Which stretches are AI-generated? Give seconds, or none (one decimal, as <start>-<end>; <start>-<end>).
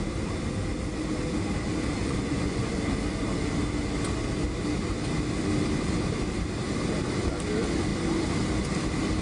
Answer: 2.0-2.8